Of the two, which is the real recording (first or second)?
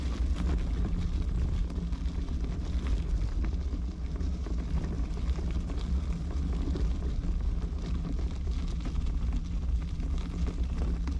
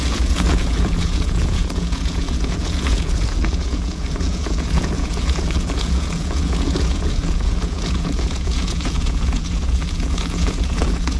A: first